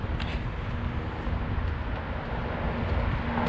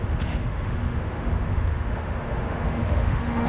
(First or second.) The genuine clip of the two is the first